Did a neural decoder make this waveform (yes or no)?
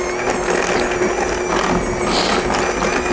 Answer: no